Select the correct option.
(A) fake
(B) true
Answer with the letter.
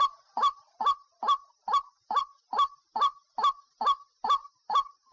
B